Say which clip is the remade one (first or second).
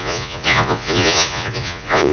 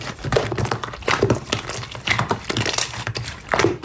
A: first